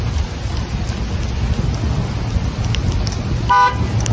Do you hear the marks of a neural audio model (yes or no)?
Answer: no